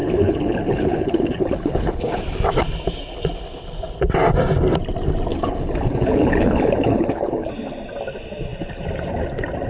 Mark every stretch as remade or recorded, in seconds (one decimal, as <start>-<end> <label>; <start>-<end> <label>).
0.0-2.2 remade; 2.2-5.3 recorded; 5.3-7.5 remade; 7.5-9.7 recorded